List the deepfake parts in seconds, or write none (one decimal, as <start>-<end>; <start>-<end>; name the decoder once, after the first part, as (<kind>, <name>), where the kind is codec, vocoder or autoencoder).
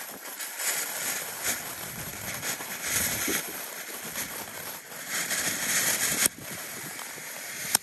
0.0-7.8 (vocoder, BigVGAN v2)